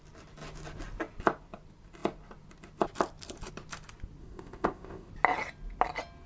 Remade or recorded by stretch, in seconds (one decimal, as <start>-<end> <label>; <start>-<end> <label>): 0.0-4.2 recorded; 4.2-5.1 remade; 5.1-6.3 recorded